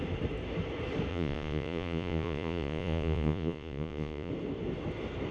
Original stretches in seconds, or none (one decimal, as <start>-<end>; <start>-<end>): 0.0-1.1; 4.3-5.3